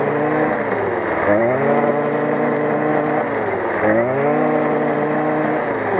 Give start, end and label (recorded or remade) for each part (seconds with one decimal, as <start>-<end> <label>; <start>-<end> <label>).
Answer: 0.0-6.0 recorded